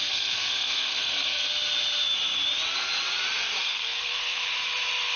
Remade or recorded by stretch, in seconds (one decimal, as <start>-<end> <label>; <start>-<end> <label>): 0.0-1.4 remade; 1.4-3.6 recorded; 3.6-4.4 remade; 4.4-5.2 recorded